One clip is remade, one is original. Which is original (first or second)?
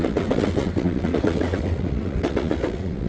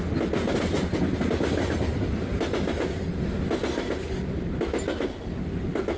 second